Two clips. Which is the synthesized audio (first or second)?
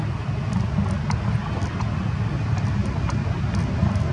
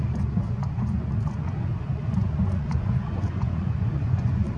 second